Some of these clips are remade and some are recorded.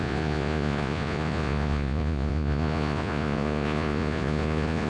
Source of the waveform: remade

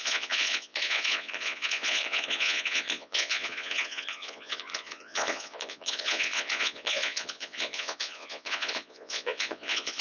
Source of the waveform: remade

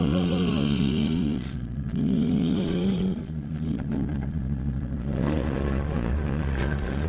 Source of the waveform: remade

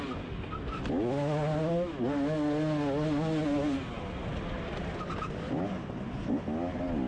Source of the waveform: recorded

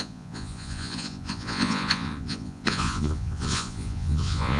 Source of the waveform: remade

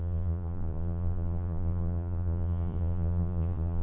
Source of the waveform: remade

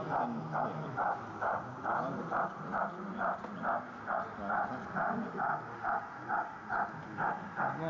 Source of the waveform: recorded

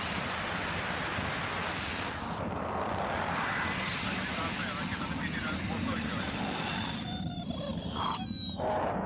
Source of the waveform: recorded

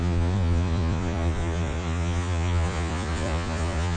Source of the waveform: remade